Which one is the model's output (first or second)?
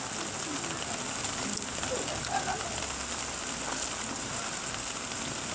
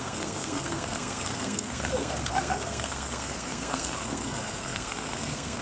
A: second